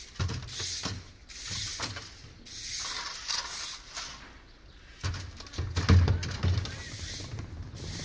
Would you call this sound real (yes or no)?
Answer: yes